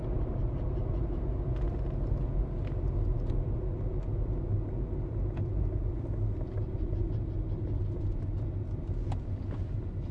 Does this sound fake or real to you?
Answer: real